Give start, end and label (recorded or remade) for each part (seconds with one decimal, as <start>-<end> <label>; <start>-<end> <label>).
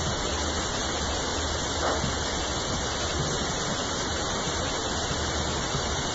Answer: 0.0-1.3 remade; 1.3-3.0 recorded; 3.0-4.8 remade; 4.8-5.6 recorded; 5.6-6.1 remade